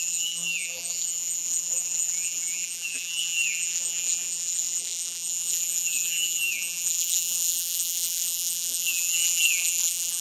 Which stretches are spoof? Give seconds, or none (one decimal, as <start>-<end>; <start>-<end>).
0.0-10.2